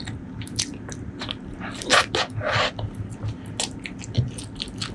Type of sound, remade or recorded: recorded